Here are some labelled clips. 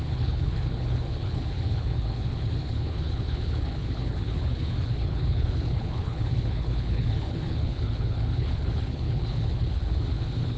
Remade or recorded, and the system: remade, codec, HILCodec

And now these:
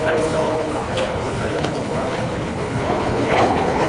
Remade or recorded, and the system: remade, codec, HILCodec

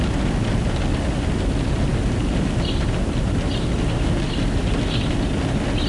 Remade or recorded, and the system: recorded